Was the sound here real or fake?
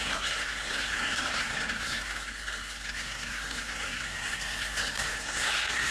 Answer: fake